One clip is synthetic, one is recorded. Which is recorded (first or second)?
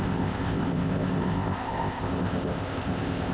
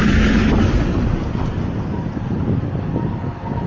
second